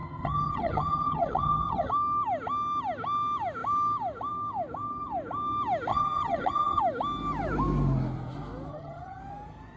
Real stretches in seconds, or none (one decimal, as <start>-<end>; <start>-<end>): 1.9-5.9; 6.8-8.7; 9.2-9.8